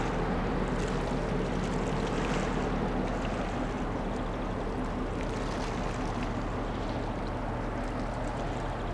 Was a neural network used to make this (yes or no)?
no